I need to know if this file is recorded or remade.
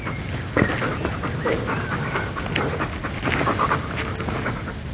recorded